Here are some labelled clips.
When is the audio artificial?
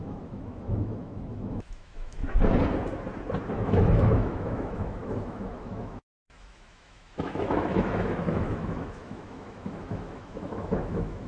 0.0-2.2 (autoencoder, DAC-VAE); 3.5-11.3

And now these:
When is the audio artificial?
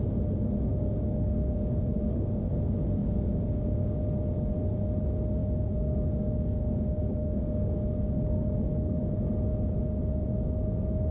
0.7-2.5 (codec, DAC); 3.0-4.0; 5.4-9.1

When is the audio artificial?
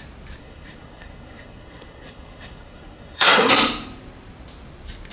0.4-3.5 (codec, SNAC)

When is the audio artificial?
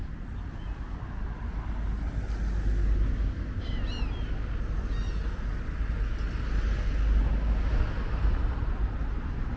none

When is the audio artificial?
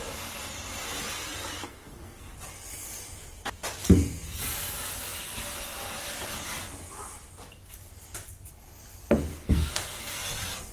1.6-2.3 (codec, SNAC); 9.3-10.2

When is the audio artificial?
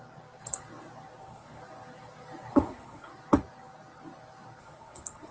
1.2-1.6 (codec, HILCodec); 2.5-3.1; 4.6-5.3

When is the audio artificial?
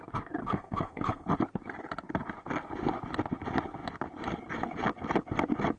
0.4-1.3 (codec, SNAC)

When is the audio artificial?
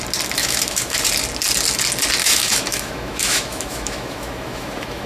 0.4-1.0 (autoencoder, DAC-VAE); 2.2-5.1